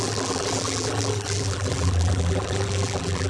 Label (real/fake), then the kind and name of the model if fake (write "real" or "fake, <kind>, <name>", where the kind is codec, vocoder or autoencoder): fake, vocoder, BigVGAN v2